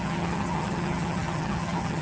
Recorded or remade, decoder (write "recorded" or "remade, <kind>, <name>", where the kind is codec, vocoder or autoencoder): remade, vocoder, HiFi-GAN